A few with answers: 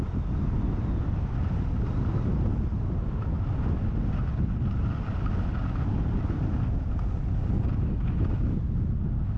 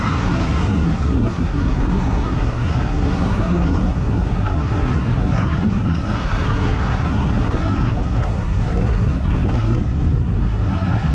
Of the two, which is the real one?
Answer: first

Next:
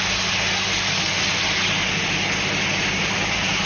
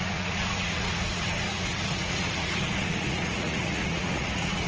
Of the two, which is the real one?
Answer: first